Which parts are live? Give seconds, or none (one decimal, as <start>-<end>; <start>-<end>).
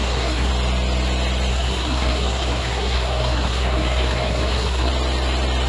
0.5-1.5; 4.9-5.7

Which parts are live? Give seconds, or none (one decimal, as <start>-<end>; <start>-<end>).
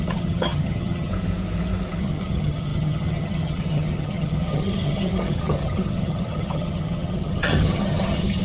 1.1-2.0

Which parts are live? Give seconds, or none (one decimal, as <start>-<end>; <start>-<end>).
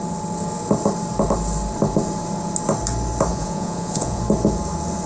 0.0-3.3; 4.2-5.1